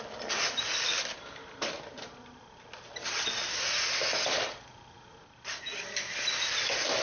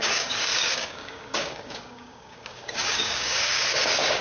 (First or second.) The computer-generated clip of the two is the second